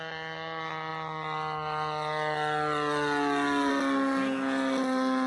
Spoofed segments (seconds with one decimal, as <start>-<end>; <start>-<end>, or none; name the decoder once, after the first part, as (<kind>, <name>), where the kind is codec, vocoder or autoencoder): none